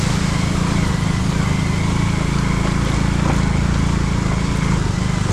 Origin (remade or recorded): recorded